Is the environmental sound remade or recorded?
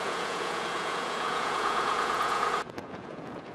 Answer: remade